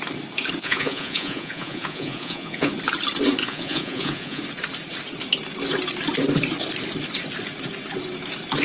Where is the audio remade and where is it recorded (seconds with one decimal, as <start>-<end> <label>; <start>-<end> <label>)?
0.0-0.6 recorded; 0.6-2.7 remade; 2.7-3.4 recorded; 3.4-4.4 remade; 4.4-8.6 recorded

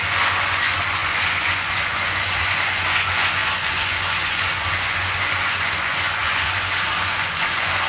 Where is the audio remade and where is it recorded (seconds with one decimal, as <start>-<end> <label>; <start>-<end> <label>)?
0.0-7.9 remade

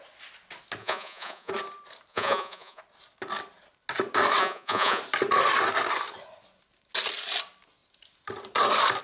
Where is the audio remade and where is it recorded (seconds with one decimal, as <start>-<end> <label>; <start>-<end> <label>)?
0.0-0.8 recorded; 0.8-1.5 remade; 1.5-2.1 recorded; 2.1-2.8 remade; 2.8-4.4 recorded; 4.4-5.0 remade; 5.0-9.0 recorded

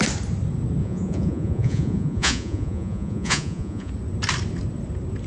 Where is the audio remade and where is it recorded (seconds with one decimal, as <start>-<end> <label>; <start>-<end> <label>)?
0.0-0.8 recorded; 0.8-3.9 remade; 3.9-5.3 recorded